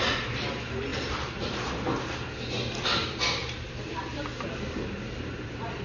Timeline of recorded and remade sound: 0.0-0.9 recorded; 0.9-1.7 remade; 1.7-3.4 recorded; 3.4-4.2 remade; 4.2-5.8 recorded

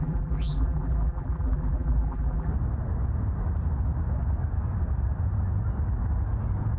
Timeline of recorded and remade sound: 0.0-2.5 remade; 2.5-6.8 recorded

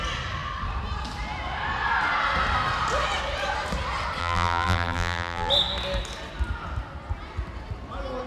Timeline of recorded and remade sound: 0.0-4.2 recorded; 4.2-5.5 remade; 5.5-8.3 recorded

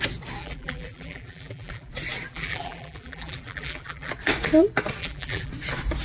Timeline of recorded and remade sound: 0.0-0.4 recorded; 0.4-1.9 remade; 1.9-2.3 recorded; 2.3-4.1 remade; 4.1-5.0 recorded; 5.0-5.5 remade; 5.5-6.0 recorded